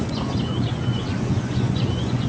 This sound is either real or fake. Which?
fake